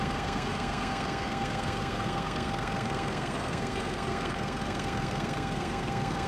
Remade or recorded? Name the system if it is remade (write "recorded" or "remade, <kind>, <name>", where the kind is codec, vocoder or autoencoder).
remade, codec, SNAC